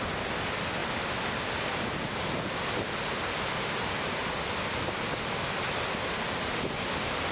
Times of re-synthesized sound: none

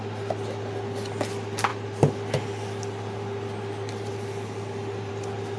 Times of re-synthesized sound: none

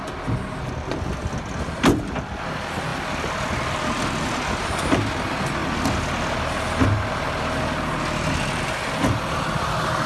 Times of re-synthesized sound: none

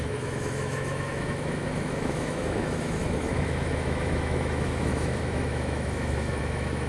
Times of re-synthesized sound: 0.0-6.9 (autoencoder, DAC-VAE)

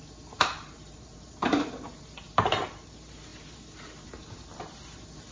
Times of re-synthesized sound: 0.0-5.3 (vocoder, BigVGAN v2)